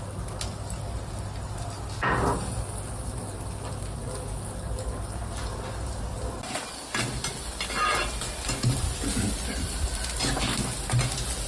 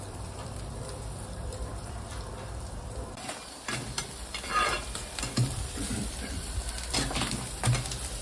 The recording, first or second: first